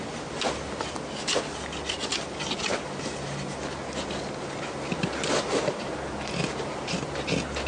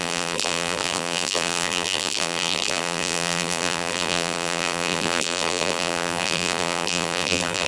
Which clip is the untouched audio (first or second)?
first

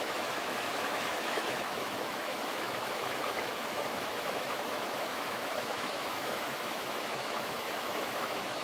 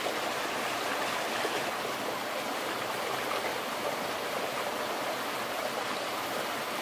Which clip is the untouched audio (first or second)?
second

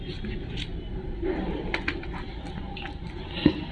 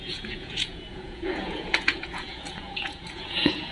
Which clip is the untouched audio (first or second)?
first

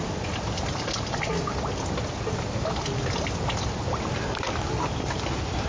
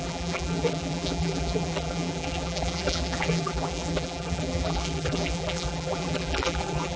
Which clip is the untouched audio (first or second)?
first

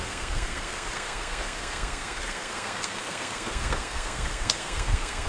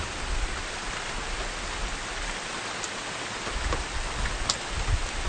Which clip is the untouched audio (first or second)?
second